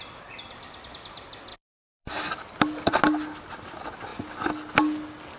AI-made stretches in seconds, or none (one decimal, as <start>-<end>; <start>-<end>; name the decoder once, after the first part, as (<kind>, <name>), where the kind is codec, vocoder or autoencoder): 1.5-2.9 (vocoder, BigVGAN v2)